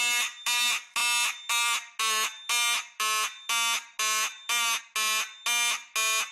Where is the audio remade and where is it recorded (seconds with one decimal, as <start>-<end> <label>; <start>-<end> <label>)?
0.0-6.3 recorded